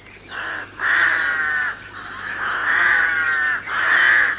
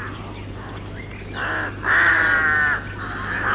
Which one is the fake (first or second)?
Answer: first